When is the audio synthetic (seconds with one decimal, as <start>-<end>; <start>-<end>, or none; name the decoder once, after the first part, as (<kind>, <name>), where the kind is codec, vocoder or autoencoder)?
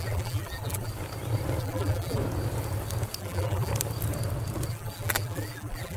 0.0-0.9 (vocoder, BigVGAN v2); 1.6-2.2; 3.2-3.7; 4.7-6.0